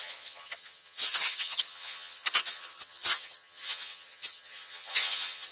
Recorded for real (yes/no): no